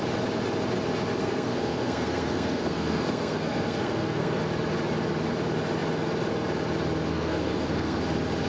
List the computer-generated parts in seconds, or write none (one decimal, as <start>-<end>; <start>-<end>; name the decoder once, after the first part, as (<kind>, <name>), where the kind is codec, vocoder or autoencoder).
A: 1.2-4.4 (codec, SNAC); 7.1-8.0